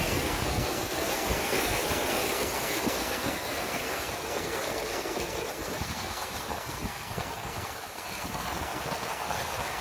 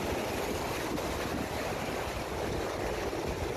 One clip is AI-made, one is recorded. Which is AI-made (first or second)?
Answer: first